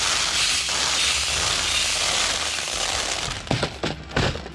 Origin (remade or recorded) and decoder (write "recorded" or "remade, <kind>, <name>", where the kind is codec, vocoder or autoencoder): recorded